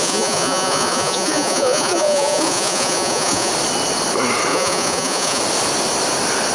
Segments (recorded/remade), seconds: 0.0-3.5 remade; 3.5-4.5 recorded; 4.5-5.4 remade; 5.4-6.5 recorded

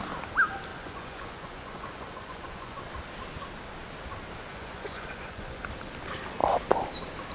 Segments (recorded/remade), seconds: 0.0-0.7 recorded; 0.7-2.8 remade; 2.8-4.5 recorded; 4.5-5.6 remade; 5.6-7.3 recorded

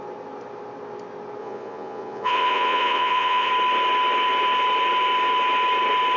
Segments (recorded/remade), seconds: 0.0-1.4 recorded; 1.4-3.5 remade; 3.5-6.2 recorded

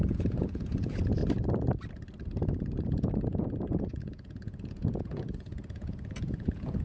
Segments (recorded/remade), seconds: 0.0-1.2 remade; 1.2-2.8 recorded; 2.8-6.8 remade